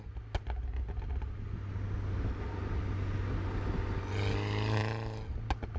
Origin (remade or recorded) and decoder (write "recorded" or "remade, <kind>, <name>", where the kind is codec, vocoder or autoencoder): recorded